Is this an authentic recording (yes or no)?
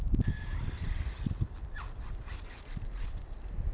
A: yes